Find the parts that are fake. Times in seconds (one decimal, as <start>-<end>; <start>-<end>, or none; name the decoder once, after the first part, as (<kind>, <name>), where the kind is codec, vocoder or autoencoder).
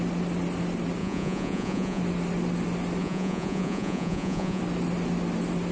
1.0-2.0 (vocoder, Vocos); 3.0-4.6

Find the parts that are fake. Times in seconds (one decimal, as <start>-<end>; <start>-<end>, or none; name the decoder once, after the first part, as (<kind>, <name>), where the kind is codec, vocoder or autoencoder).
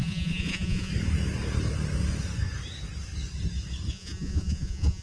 0.0-0.9 (vocoder, Vocos); 3.9-5.0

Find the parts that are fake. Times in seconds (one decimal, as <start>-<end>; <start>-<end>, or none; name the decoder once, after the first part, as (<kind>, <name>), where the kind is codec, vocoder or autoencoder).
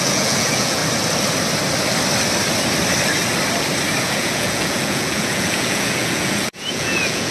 0.0-0.8 (vocoder, Vocos); 4.0-7.3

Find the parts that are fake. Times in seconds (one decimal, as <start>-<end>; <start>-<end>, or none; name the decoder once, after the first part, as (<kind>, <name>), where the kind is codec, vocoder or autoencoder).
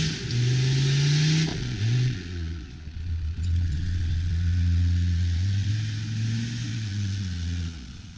1.5-5.7 (vocoder, Vocos); 6.7-8.2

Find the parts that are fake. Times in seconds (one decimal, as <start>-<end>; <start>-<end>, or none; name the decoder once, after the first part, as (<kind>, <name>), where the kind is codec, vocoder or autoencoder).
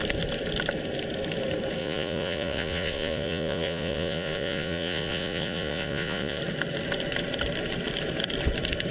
1.8-6.4 (vocoder, Vocos)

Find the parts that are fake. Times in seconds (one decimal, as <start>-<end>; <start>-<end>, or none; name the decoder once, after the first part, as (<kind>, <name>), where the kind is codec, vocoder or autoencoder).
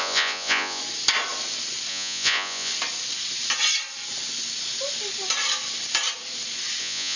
0.0-0.8 (vocoder, Vocos); 1.9-2.7; 6.8-7.2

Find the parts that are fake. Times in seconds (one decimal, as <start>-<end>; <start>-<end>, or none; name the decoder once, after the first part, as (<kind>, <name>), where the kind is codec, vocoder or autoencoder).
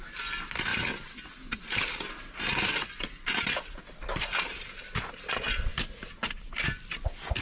none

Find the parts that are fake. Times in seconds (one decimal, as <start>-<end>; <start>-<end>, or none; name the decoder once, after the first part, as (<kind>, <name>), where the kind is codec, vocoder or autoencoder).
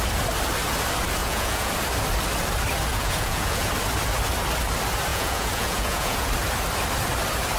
1.2-1.7 (vocoder, Vocos); 2.9-3.7; 5.1-6.3